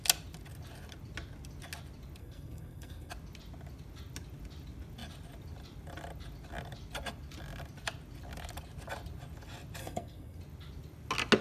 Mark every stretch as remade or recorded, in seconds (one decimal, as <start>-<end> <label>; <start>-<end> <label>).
0.0-2.2 recorded; 2.2-3.1 remade; 3.1-9.8 recorded; 9.8-10.4 remade; 10.4-11.4 recorded